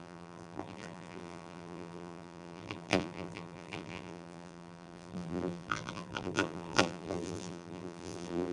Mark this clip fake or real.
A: fake